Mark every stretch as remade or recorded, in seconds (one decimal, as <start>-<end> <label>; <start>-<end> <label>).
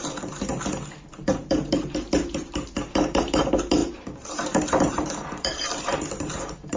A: 0.0-0.5 remade; 0.5-1.1 recorded; 1.1-6.8 remade